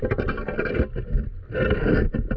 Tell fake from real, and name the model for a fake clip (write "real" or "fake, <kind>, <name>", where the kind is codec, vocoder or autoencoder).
real